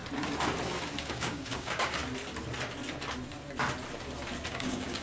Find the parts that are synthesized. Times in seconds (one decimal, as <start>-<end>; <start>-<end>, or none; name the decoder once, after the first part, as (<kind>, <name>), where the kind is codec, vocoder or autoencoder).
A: 1.0-2.0 (codec, DAC); 4.5-5.0